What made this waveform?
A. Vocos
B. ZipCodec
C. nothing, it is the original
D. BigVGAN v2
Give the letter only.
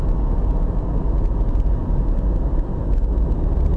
C